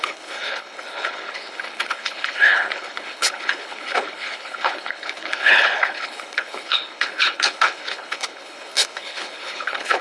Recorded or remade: remade